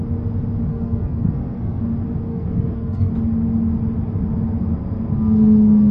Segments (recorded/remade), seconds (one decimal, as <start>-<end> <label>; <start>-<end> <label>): 0.0-0.7 recorded; 0.7-1.8 remade; 1.8-2.3 recorded; 2.3-3.1 remade; 3.1-5.9 recorded